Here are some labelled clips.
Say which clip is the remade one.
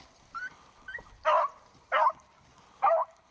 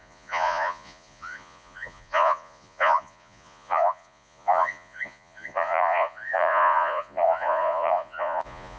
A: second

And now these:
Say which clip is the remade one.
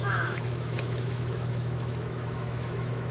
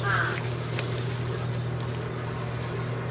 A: first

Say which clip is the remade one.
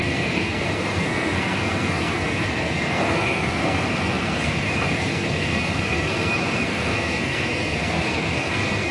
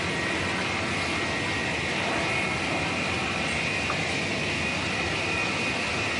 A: first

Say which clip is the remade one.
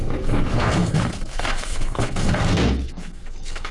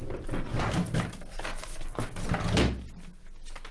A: first